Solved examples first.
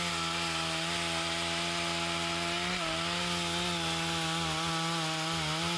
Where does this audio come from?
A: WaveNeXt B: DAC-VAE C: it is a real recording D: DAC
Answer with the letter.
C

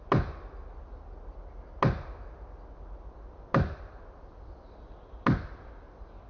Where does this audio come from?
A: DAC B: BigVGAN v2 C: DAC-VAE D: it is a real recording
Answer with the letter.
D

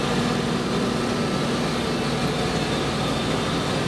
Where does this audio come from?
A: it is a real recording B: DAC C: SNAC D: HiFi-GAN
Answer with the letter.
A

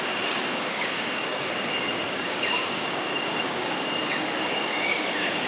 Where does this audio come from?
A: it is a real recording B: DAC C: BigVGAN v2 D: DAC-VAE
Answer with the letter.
B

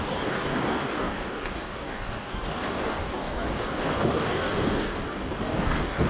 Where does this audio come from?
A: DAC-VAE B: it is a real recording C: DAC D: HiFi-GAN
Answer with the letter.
C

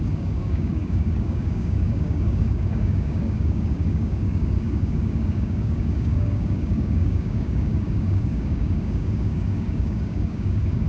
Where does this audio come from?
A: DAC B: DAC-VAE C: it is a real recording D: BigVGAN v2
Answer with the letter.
A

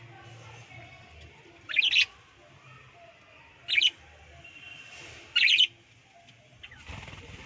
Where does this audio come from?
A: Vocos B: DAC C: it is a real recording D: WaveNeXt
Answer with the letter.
C